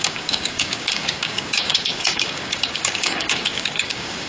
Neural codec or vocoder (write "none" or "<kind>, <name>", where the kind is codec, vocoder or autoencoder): codec, DAC